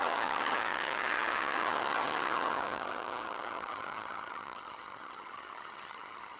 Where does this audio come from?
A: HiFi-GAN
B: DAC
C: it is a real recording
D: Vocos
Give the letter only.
A